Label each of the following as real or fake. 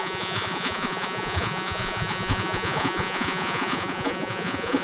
fake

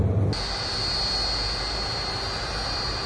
real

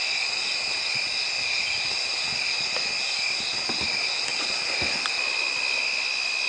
real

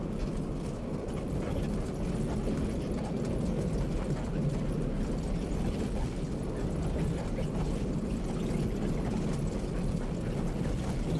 real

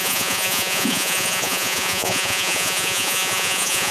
fake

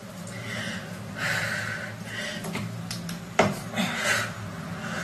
real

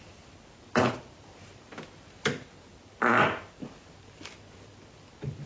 real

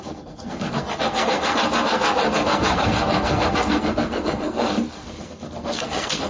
fake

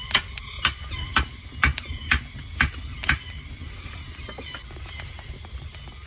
real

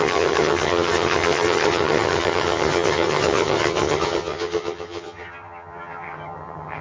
fake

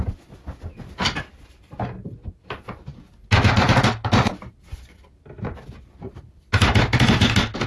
real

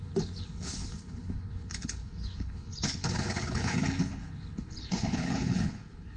fake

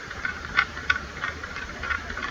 fake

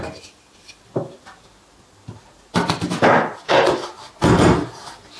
real